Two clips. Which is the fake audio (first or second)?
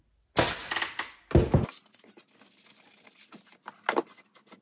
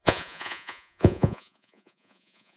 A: second